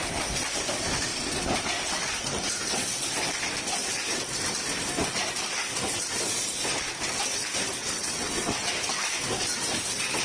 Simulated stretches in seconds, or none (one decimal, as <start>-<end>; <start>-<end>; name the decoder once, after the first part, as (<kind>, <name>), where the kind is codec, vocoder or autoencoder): 7.8-8.7 (vocoder, WaveNeXt)